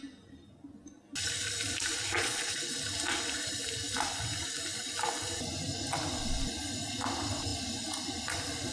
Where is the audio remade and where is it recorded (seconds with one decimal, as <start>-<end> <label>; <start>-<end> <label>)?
0.0-2.2 recorded; 2.2-2.7 remade; 2.7-8.7 recorded